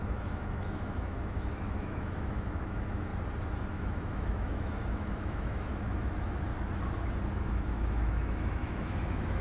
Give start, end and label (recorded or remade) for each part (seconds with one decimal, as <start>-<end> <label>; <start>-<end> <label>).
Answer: 0.0-3.1 remade; 3.1-3.7 recorded; 3.7-6.5 remade; 6.5-7.5 recorded; 7.5-9.4 remade